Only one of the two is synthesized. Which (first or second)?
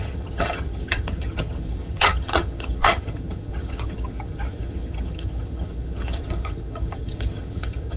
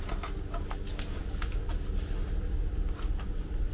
first